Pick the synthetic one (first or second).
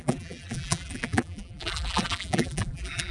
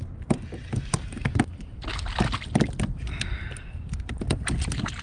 first